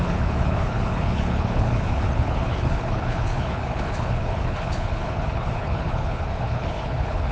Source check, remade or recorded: remade